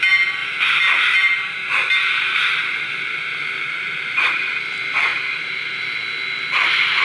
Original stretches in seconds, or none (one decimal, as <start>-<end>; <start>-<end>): 0.0-0.4; 0.9-1.6; 4.6-5.1; 5.8-7.0